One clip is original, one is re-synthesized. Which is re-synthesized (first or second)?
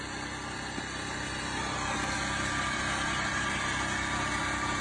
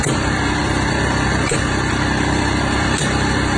second